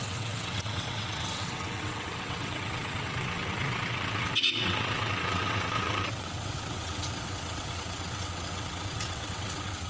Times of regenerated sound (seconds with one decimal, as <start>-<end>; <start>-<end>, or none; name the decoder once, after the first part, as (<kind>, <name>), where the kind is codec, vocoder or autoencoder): 0.0-9.9 (vocoder, WaveNeXt)